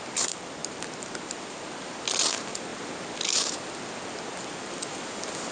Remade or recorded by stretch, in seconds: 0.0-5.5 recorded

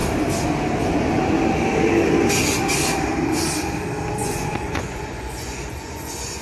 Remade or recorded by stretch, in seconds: 0.0-4.2 recorded; 4.2-6.4 remade

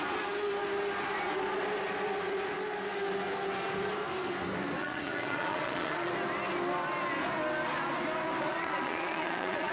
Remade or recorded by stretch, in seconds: 0.0-4.8 recorded; 4.8-6.1 remade; 6.1-8.4 recorded; 8.4-9.7 remade